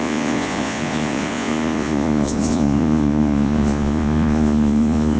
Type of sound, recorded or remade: remade